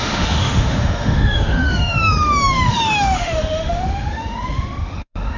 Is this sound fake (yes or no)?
yes